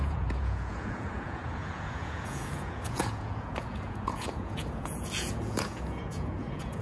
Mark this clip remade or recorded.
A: remade